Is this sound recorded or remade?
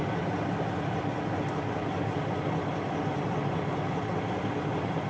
recorded